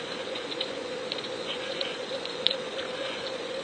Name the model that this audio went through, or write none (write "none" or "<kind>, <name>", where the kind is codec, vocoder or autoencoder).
vocoder, Vocos